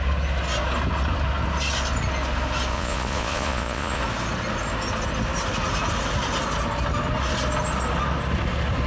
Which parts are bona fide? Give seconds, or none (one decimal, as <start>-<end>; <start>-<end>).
0.0-2.7; 4.0-8.9